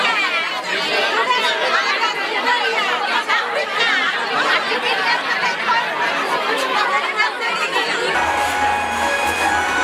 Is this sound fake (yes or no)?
no